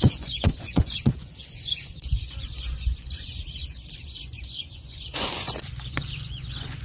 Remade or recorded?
remade